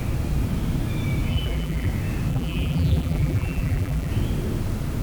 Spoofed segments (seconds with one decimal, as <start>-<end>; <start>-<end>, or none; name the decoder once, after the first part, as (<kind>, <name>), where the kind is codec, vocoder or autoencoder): 1.3-1.9 (vocoder, BigVGAN v2); 2.3-4.1

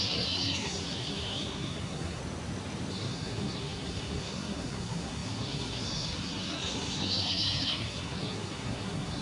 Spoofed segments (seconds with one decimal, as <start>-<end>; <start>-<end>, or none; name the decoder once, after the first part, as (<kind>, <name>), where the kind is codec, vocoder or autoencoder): 0.0-2.2 (codec, SNAC); 2.9-9.2